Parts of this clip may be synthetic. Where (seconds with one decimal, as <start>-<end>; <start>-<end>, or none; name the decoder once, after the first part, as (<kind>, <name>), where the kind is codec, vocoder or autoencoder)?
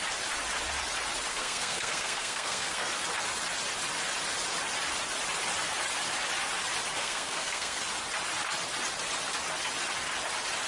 1.3-2.9 (codec, SNAC); 7.0-7.8